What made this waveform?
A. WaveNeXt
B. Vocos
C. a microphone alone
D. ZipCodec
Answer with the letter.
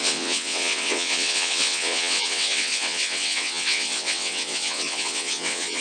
A